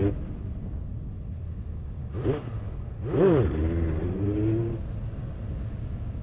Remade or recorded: recorded